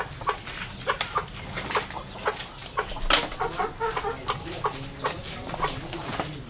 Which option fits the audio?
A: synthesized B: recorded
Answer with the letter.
B